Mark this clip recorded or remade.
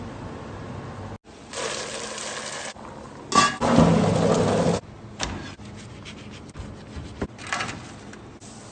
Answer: recorded